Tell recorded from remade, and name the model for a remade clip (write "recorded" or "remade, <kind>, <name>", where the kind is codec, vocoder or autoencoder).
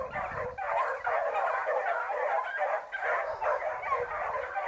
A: recorded